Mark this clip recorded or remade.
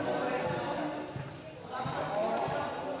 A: recorded